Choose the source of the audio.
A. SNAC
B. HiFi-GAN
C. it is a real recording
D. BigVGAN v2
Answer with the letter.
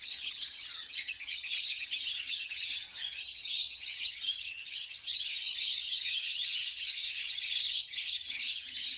B